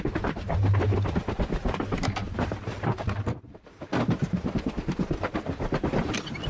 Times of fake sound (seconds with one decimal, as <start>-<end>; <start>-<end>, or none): 2.2-6.1